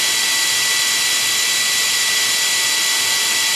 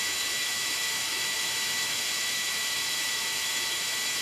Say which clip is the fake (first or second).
second